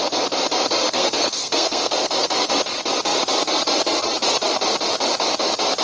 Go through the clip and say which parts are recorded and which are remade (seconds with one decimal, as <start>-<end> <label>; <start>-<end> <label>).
0.0-0.8 recorded; 0.8-2.5 remade; 2.5-5.8 recorded